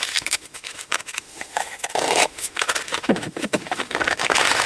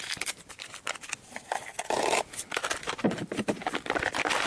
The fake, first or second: first